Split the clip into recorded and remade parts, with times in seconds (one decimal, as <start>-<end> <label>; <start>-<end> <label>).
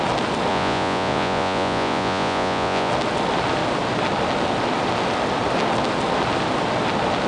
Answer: 0.0-0.5 recorded; 0.5-2.9 remade; 2.9-7.3 recorded